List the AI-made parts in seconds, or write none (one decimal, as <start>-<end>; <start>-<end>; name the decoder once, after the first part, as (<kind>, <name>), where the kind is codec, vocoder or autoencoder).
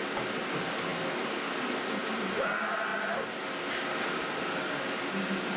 none